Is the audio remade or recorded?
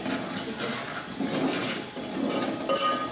recorded